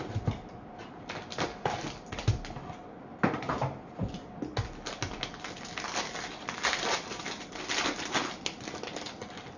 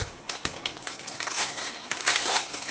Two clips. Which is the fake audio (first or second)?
second